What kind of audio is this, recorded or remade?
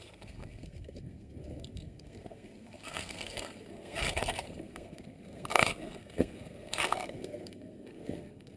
remade